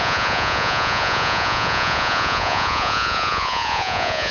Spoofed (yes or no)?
yes